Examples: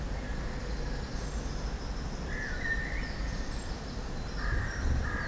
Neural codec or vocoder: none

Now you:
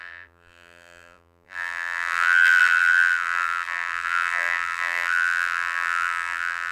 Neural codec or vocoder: vocoder, BigVGAN v2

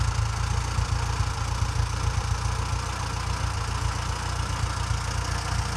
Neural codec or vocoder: none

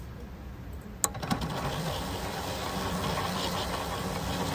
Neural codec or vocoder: none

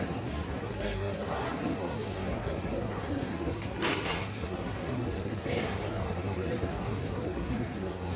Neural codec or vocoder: codec, SNAC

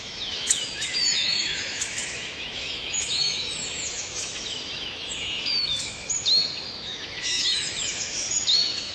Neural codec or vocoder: autoencoder, DAC-VAE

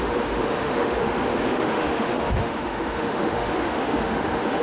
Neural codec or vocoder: autoencoder, DAC-VAE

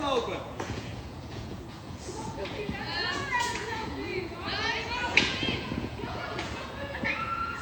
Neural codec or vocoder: vocoder, Vocos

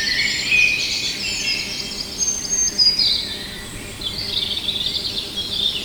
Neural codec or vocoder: none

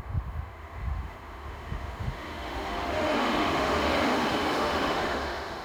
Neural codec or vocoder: autoencoder, DAC-VAE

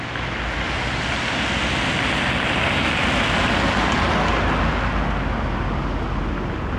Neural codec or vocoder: none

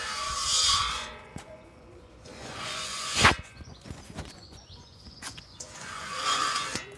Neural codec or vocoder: vocoder, Vocos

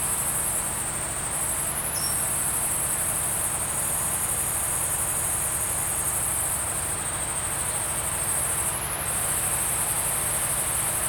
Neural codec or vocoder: none